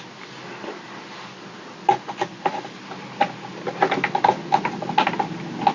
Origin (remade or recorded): recorded